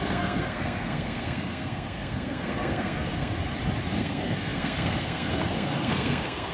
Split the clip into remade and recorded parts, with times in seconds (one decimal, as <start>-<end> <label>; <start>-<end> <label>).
0.0-3.3 remade; 3.3-4.0 recorded; 4.0-6.5 remade